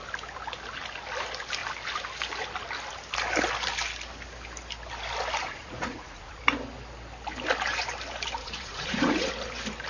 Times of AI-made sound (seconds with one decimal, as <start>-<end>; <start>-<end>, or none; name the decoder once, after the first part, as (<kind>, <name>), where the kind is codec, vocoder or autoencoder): 5.4-6.4 (vocoder, Vocos); 8.4-9.3